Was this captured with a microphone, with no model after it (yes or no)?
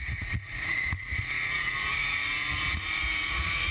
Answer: no